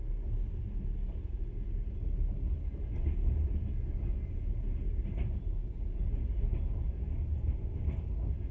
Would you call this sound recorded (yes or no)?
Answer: yes